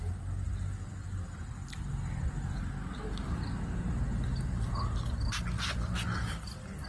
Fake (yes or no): no